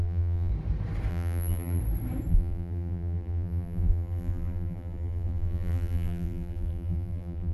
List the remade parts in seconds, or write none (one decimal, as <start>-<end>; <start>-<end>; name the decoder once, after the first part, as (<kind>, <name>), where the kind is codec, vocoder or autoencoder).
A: 0.0-0.5 (vocoder, BigVGAN v2); 1.1-1.8; 2.3-7.5